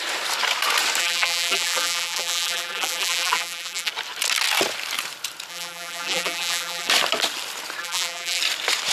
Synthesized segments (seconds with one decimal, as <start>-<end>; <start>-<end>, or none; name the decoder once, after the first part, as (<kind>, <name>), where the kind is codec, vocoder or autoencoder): 1.0-3.9 (vocoder, BigVGAN v2); 5.5-6.9; 7.8-8.4

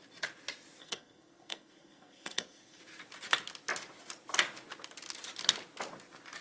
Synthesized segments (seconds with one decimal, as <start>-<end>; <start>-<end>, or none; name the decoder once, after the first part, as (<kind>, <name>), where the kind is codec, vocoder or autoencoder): 0.8-2.8 (codec, SNAC)

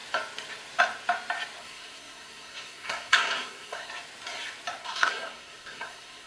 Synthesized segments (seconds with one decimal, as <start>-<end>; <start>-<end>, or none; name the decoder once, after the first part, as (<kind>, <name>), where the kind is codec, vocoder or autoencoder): 1.6-3.9 (codec, SNAC); 4.8-6.3

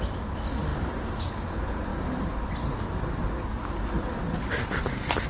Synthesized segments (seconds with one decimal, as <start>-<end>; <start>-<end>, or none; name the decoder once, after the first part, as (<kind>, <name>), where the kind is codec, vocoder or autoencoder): none